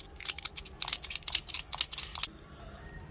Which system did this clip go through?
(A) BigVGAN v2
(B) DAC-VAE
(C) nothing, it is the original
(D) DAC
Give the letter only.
C